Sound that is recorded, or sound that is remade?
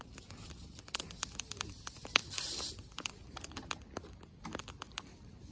recorded